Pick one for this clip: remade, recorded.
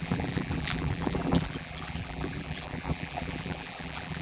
remade